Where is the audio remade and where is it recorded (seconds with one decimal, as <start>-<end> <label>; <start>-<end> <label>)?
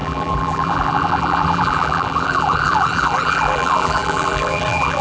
0.0-5.0 remade